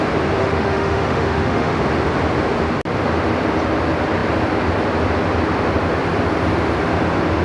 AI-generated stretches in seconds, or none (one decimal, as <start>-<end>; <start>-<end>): 0.4-1.8